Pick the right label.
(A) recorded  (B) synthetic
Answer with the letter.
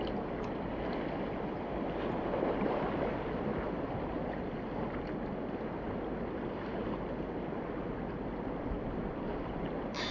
A